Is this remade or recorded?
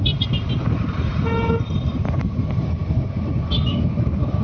recorded